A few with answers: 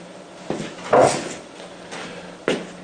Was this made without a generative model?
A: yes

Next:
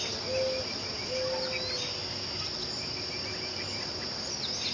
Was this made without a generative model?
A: yes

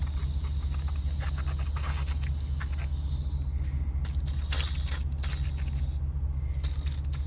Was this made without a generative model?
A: yes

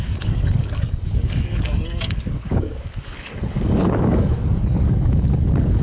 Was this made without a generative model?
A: no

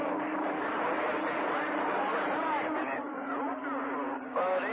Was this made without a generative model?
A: no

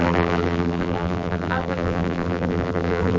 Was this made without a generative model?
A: no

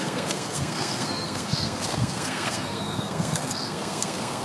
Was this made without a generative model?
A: no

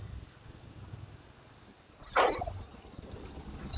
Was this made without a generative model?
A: yes